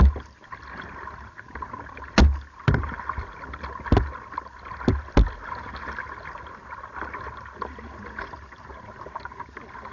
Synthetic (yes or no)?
no